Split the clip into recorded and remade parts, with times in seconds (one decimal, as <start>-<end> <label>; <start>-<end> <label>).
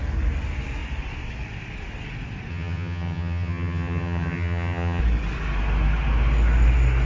0.0-2.5 recorded; 2.5-5.0 remade; 5.0-7.1 recorded